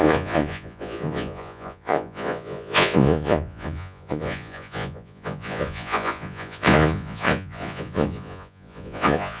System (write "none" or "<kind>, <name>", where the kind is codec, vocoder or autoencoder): vocoder, Vocos